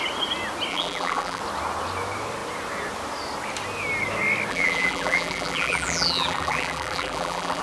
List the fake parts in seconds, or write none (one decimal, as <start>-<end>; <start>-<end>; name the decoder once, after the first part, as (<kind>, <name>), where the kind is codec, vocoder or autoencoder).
0.7-1.4 (vocoder, BigVGAN v2); 4.5-7.6